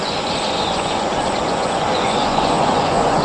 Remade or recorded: remade